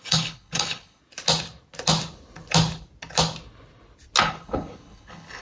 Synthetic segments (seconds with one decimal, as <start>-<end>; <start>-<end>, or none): 0.0-1.0; 4.2-5.4